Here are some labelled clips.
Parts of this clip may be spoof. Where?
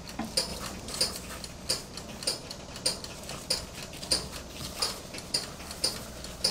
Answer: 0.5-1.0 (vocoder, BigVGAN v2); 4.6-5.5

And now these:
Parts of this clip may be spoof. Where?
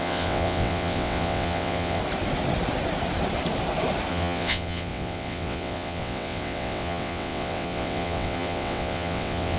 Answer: 0.0-2.0 (vocoder, WaveNeXt); 4.1-9.6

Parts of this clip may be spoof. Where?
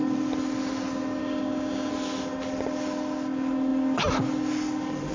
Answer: 1.2-1.9 (codec, DAC)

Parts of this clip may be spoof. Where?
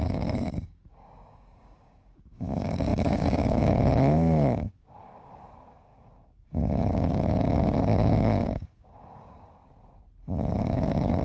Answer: 0.0-9.6 (codec, DAC); 10.6-11.2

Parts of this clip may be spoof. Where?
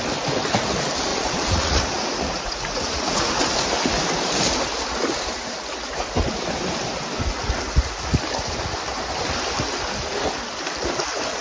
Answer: 1.1-3.4 (vocoder, Vocos)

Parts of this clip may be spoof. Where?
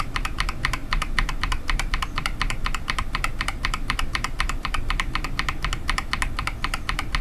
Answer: 0.8-5.1 (vocoder, BigVGAN v2)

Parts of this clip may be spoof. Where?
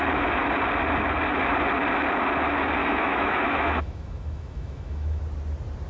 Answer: 2.8-5.2 (autoencoder, DAC-VAE)